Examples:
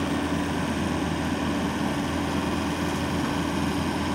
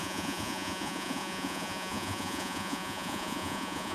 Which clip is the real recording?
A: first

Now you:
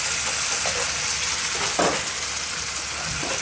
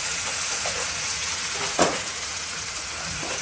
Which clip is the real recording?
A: first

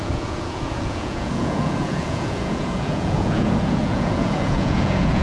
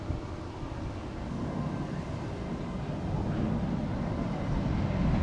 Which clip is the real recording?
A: second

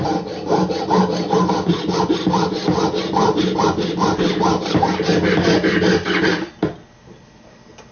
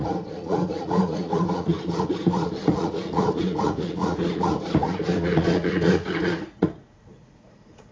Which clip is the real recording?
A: first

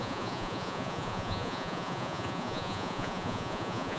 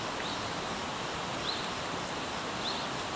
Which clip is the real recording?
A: second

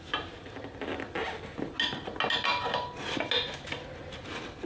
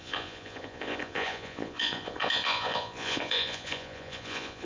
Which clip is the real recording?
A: first